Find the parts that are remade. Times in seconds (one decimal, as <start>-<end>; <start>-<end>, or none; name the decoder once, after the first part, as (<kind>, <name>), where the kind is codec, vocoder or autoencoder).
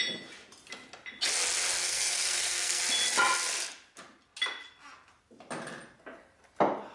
1.8-2.8 (codec, SNAC)